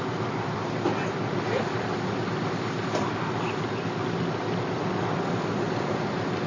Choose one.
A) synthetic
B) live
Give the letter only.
B